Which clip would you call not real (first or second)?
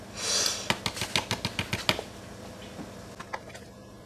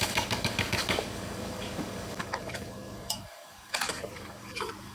second